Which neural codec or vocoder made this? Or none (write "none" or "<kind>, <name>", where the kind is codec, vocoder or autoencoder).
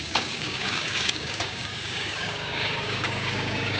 codec, DAC